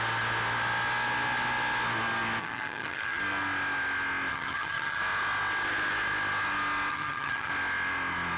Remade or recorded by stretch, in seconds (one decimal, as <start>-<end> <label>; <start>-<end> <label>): 0.0-2.4 recorded; 2.4-3.2 remade; 3.2-4.3 recorded; 4.3-5.0 remade; 5.0-6.9 recorded; 6.9-7.5 remade; 7.5-8.4 recorded